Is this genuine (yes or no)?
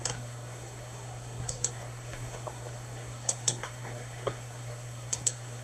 no